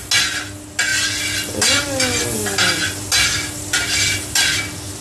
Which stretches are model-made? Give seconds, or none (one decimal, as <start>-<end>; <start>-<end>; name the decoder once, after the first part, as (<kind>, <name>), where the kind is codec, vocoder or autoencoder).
none